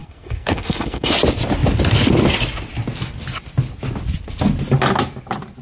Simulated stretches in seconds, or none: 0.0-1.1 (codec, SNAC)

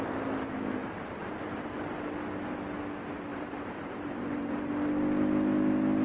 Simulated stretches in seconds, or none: 3.3-4.7 (vocoder, BigVGAN v2)

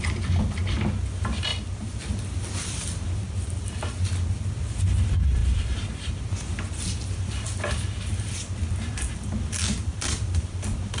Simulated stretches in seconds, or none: 0.0-0.6 (vocoder, BigVGAN v2); 1.1-11.0